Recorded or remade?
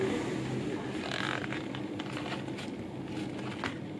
recorded